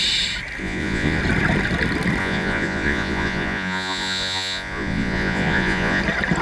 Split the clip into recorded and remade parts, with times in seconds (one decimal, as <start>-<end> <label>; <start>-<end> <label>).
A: 0.0-0.6 recorded; 0.6-1.2 remade; 1.2-2.2 recorded; 2.2-6.0 remade; 6.0-6.4 recorded